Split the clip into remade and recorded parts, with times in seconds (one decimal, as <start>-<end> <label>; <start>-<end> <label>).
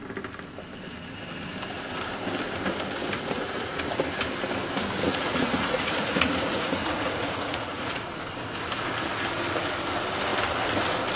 0.0-3.0 recorded; 3.0-3.8 remade; 3.8-5.1 recorded; 5.1-8.1 remade; 8.1-11.2 recorded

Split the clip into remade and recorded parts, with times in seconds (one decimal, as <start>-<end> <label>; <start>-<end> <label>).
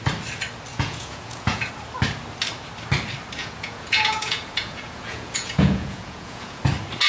0.0-0.7 recorded; 0.7-1.7 remade; 1.7-3.4 recorded; 3.4-6.6 remade; 6.6-7.1 recorded